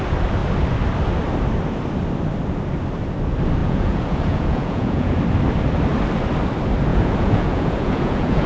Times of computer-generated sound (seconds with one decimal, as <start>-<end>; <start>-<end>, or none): 3.6-5.2; 6.9-8.5